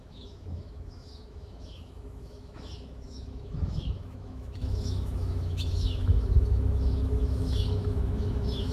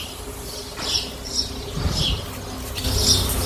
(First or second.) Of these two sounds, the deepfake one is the first